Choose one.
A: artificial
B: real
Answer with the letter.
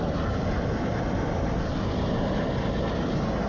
B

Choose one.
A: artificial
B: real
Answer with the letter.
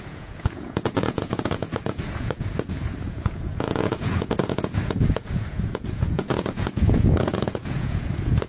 A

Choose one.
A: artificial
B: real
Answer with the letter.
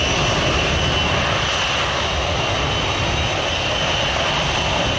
B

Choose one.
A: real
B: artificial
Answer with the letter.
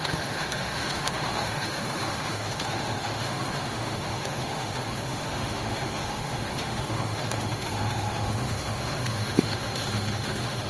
B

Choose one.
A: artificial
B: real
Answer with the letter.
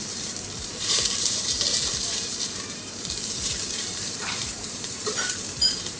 A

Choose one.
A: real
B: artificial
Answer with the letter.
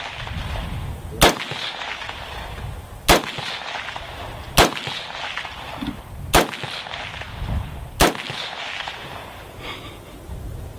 A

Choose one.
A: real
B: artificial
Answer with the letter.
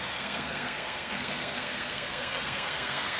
B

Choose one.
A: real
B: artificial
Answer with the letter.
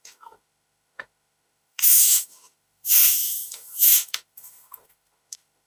B